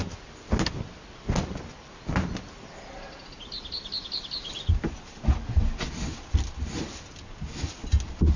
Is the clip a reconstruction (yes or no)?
no